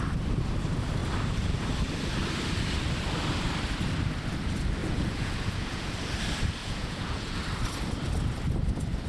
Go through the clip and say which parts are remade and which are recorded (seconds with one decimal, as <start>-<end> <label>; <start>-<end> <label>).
0.0-4.8 recorded; 4.8-5.9 remade; 5.9-6.6 recorded; 6.6-7.4 remade; 7.4-9.1 recorded